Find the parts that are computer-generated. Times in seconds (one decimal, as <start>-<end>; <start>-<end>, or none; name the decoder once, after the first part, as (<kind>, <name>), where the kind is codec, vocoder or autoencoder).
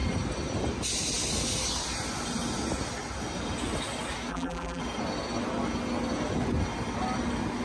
4.3-4.8 (vocoder, BigVGAN v2)